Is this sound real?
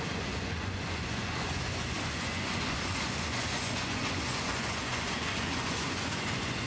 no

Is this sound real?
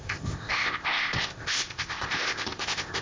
no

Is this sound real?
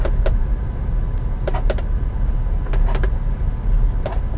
yes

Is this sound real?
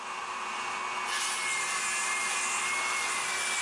yes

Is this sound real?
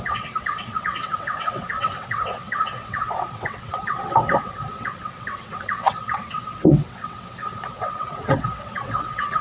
no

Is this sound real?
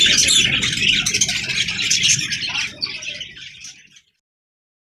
yes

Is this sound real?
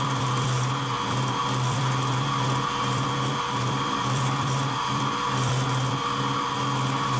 no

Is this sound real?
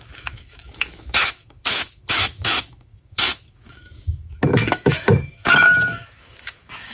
no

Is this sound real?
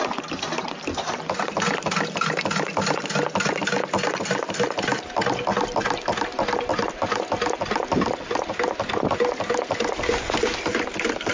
yes